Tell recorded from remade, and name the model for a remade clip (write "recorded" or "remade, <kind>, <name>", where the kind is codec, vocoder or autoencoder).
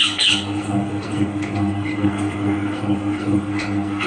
remade, codec, SNAC